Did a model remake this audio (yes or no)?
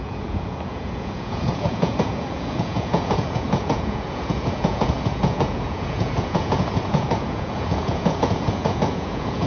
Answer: yes